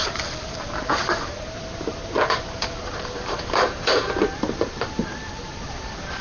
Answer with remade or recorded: remade